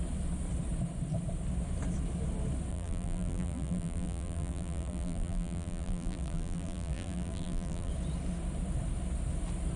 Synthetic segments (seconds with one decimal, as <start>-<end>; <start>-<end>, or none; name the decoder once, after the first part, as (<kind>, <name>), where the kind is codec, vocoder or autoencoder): 2.7-7.9 (vocoder, BigVGAN v2)